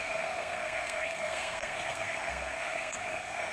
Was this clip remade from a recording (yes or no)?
yes